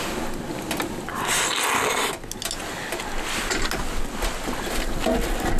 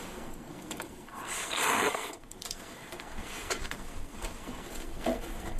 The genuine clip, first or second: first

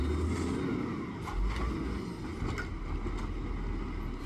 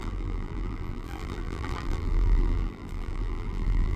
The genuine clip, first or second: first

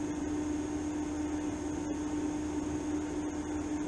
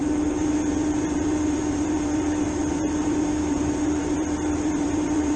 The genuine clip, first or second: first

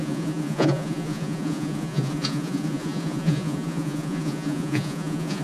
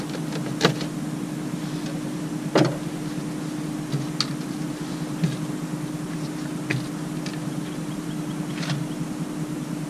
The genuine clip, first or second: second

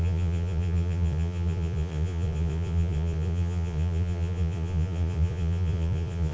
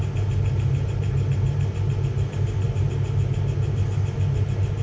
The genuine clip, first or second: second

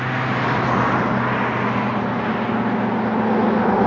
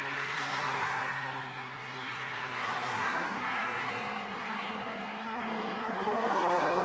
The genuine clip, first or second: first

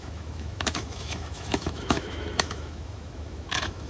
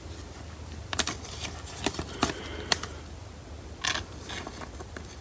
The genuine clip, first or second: second